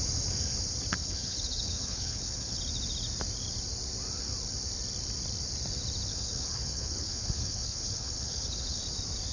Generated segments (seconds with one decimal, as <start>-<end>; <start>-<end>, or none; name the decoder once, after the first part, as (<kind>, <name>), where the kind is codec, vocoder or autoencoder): 1.0-2.6 (codec, HILCodec); 6.1-8.8